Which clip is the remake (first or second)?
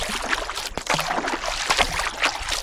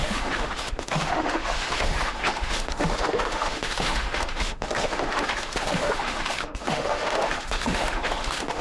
second